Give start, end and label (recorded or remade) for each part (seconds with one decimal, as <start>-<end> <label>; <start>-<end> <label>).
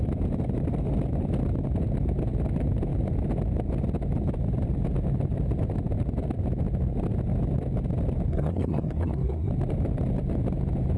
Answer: 0.0-8.3 recorded; 8.3-9.5 remade; 9.5-11.0 recorded